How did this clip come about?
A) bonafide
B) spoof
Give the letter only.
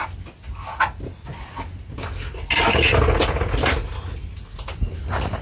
A